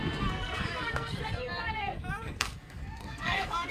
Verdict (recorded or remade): remade